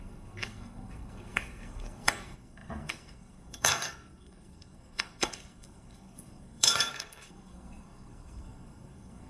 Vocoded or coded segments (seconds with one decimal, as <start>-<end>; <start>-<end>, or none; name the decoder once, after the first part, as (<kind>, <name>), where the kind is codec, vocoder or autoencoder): 0.0-9.3 (codec, SNAC)